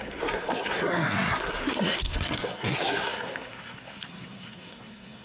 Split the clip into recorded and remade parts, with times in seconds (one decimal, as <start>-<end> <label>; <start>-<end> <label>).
0.0-5.2 remade

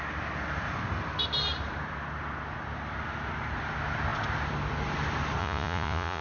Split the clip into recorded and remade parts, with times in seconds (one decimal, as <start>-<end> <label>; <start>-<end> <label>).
0.0-5.4 recorded; 5.4-6.2 remade

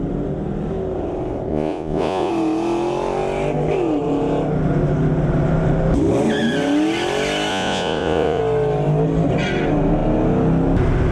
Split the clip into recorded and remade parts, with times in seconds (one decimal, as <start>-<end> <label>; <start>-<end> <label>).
0.0-1.5 recorded; 1.5-2.3 remade; 2.3-7.5 recorded; 7.5-8.4 remade; 8.4-11.1 recorded

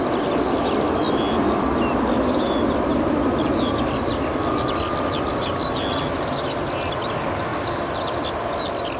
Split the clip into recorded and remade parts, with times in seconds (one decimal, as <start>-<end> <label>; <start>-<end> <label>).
0.0-9.0 recorded

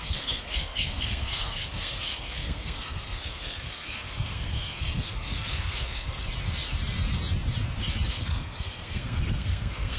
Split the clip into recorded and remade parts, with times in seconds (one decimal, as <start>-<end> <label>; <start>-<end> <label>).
0.0-6.3 remade; 6.3-8.1 recorded; 8.1-10.0 remade

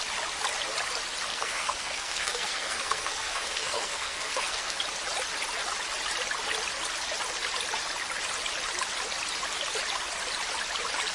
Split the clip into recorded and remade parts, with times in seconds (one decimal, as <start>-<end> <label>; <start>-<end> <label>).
0.0-1.3 recorded; 1.3-4.8 remade; 4.8-11.1 recorded

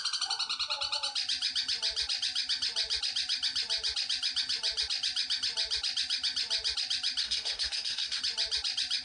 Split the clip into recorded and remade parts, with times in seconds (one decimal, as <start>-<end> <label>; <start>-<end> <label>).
0.0-7.2 recorded; 7.2-8.2 remade; 8.2-9.0 recorded

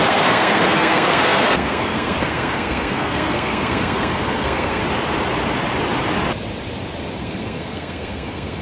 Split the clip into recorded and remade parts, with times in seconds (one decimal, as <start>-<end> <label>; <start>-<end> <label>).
0.0-4.8 remade; 4.8-7.2 recorded; 7.2-8.6 remade